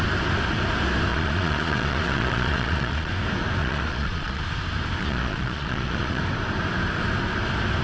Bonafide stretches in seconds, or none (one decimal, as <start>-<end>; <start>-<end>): 0.0-1.1; 3.1-3.6; 4.4-5.0; 6.2-7.8